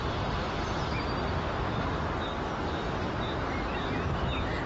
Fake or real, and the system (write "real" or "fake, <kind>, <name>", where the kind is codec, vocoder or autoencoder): real